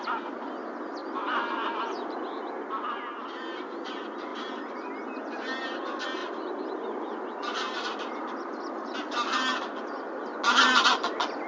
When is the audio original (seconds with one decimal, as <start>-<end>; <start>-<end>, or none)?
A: 0.0-11.5